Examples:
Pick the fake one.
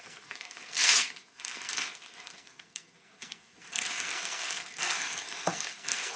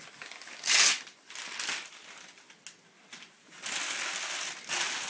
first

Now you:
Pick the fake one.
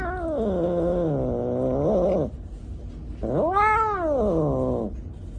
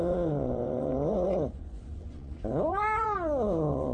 second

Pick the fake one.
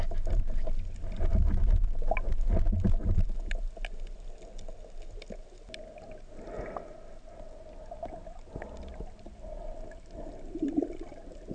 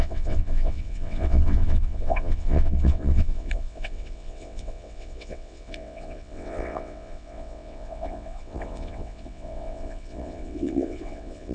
second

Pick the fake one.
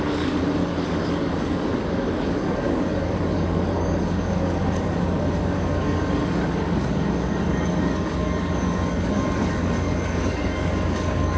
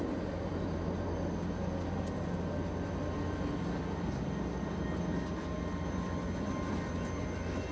first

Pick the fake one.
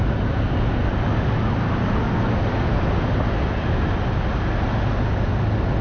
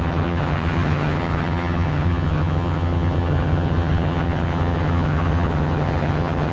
second